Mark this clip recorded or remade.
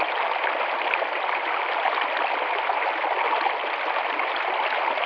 recorded